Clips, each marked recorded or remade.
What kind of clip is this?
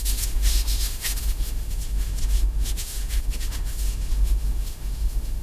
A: remade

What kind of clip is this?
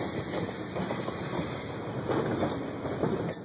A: recorded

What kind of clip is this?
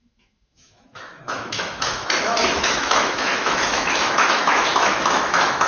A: remade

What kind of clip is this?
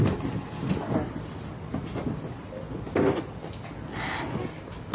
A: recorded